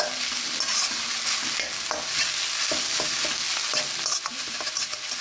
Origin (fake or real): real